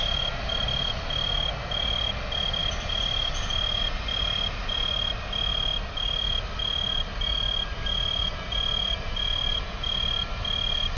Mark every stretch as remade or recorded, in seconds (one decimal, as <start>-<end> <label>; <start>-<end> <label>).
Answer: 0.0-11.0 recorded